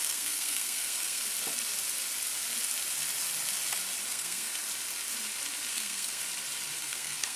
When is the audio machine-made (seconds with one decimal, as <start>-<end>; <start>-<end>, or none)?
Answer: 0.0-1.2; 4.1-4.5; 5.7-6.2; 6.8-7.4